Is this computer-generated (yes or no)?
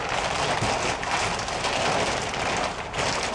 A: no